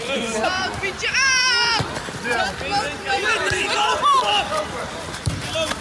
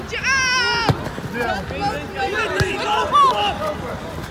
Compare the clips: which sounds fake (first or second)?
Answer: first